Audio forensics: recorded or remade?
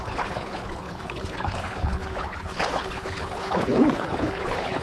remade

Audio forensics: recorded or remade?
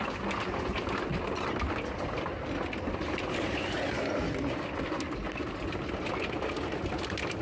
recorded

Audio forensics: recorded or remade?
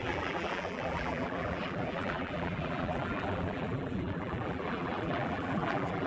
remade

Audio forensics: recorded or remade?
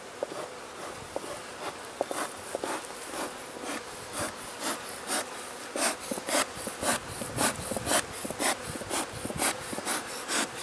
recorded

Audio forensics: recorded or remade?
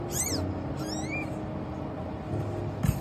recorded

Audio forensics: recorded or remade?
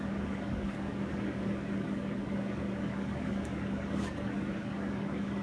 remade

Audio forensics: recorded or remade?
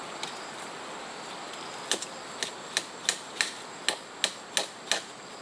recorded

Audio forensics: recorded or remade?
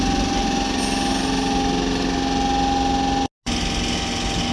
recorded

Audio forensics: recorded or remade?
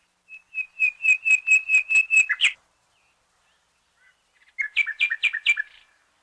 recorded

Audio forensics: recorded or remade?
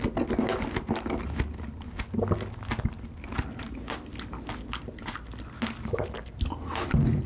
recorded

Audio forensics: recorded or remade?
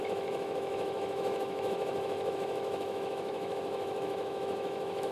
remade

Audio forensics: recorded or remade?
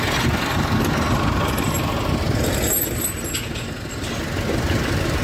recorded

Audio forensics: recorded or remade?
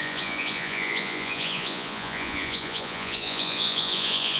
remade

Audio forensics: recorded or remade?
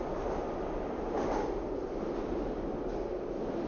recorded